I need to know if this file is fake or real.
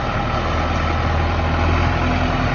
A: real